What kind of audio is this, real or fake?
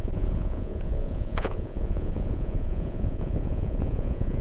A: fake